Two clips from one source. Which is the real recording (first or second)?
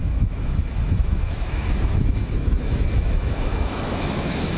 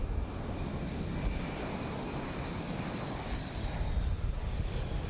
second